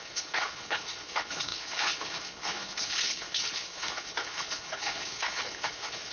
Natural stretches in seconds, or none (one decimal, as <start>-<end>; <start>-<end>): none